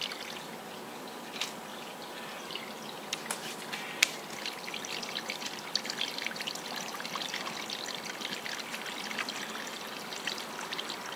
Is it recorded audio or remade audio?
recorded